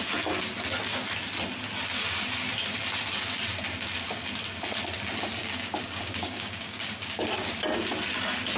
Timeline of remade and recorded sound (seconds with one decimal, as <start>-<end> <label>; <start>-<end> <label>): 0.0-5.4 recorded; 5.4-7.6 remade; 7.6-8.6 recorded